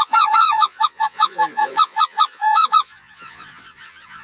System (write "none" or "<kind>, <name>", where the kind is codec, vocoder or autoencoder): vocoder, Vocos